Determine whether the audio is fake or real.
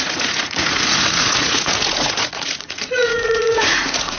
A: fake